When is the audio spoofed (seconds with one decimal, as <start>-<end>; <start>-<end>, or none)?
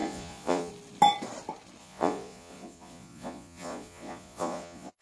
0.0-0.7; 1.8-5.0